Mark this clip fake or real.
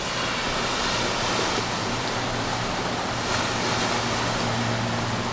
real